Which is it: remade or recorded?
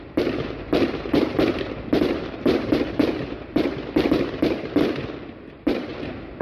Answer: remade